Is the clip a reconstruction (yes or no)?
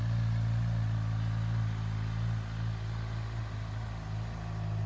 no